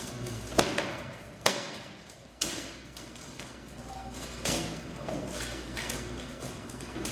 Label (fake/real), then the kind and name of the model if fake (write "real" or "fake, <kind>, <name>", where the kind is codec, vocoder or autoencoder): fake, codec, SNAC